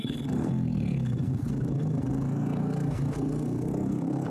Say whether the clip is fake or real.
fake